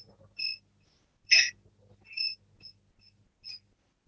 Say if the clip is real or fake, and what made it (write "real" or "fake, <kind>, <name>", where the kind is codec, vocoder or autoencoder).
real